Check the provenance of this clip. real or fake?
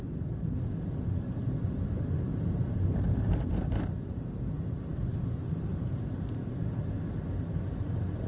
real